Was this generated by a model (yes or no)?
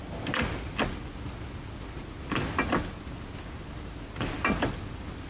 no